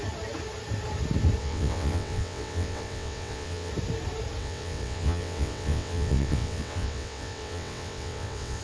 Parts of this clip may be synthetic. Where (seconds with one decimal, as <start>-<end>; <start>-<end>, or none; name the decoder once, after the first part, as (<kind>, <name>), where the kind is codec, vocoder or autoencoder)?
1.4-3.7 (vocoder, WaveNeXt); 4.4-8.6